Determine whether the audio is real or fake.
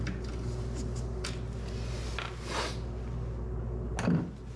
real